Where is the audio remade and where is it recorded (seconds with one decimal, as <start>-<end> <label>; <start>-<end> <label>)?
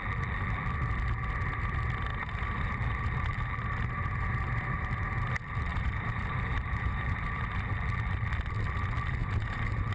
0.0-2.1 recorded; 2.1-3.4 remade; 3.4-5.7 recorded; 5.7-7.6 remade; 7.6-9.2 recorded; 9.2-9.9 remade